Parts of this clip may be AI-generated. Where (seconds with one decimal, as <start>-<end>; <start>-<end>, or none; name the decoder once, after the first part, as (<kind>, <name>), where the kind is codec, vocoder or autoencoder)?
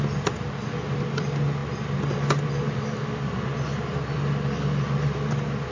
none